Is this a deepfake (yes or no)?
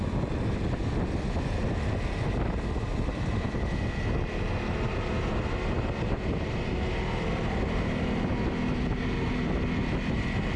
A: no